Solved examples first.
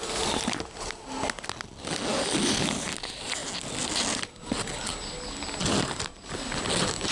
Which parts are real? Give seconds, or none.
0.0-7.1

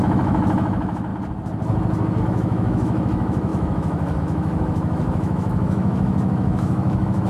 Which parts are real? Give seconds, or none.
1.1-2.2